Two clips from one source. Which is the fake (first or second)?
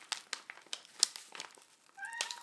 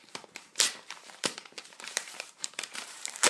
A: second